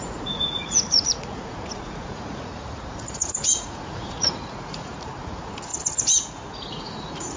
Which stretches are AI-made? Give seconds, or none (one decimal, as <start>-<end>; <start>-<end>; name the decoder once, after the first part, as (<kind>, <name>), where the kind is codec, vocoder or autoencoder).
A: 0.0-5.7 (vocoder, Vocos); 6.7-7.4